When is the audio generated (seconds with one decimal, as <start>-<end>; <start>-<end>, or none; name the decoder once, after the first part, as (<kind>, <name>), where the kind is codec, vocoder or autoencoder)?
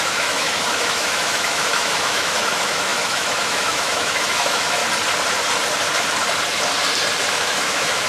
0.0-4.8 (autoencoder, DAC-VAE); 7.3-8.1